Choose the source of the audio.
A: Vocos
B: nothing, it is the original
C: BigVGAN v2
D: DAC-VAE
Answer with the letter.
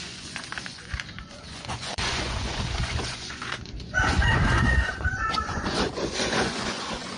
A